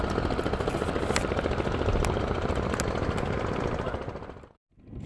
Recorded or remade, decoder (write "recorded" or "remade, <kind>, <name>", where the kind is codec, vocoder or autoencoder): recorded